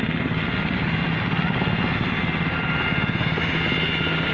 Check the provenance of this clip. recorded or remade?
recorded